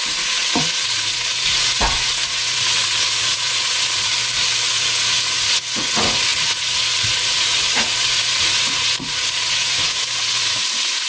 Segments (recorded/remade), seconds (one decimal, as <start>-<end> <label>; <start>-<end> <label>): 0.0-4.1 remade; 4.1-4.7 recorded; 4.7-11.1 remade